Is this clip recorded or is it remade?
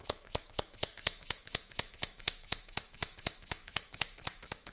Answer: remade